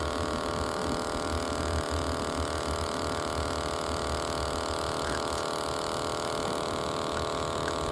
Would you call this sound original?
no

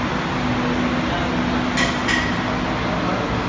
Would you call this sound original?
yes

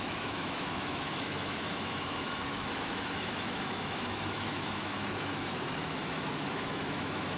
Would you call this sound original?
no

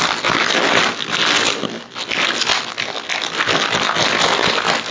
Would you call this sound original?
yes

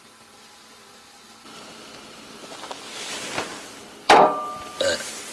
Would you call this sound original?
no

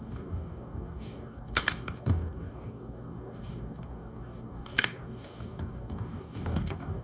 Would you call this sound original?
no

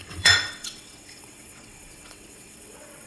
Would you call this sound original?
no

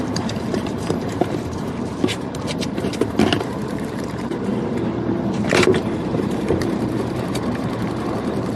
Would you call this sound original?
no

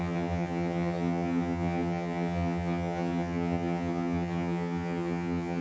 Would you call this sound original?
no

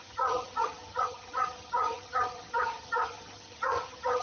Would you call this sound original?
no